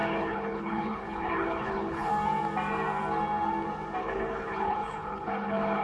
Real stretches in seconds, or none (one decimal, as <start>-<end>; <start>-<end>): 2.1-4.0

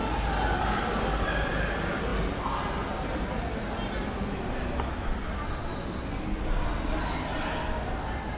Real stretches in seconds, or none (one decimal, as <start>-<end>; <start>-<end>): 0.0-8.4

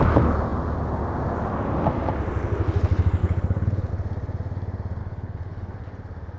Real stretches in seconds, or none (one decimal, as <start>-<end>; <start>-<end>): 0.0-3.2; 3.9-5.0; 5.8-6.4

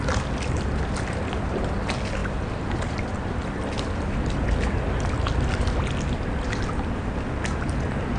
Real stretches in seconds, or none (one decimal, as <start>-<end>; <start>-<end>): 0.0-8.2

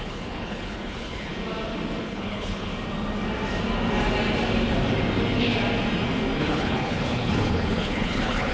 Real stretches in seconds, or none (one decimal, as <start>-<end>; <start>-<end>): 1.3-2.0; 2.7-6.4

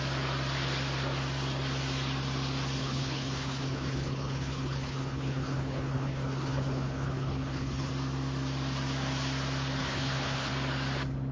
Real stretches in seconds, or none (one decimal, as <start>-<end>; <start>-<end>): 0.0-2.8; 7.9-9.8; 10.5-11.3

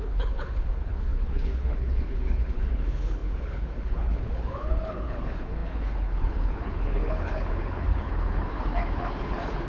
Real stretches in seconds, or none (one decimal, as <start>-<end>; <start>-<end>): none